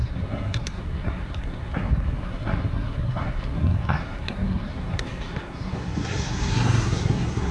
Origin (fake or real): fake